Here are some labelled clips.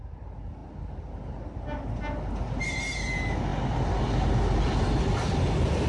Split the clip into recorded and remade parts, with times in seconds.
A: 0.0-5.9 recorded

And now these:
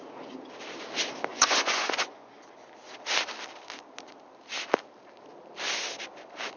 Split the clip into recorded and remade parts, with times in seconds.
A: 0.0-1.3 recorded; 1.3-2.3 remade; 2.3-6.6 recorded